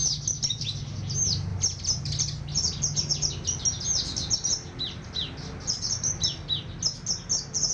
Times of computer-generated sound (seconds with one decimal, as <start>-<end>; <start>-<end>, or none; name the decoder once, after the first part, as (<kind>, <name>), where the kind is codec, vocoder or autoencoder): none